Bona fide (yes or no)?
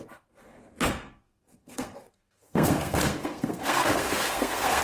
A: no